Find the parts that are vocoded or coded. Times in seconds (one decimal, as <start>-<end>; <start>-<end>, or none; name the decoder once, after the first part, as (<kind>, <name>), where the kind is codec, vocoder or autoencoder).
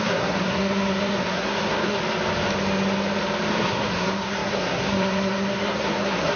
0.0-2.0 (codec, SNAC); 3.5-6.4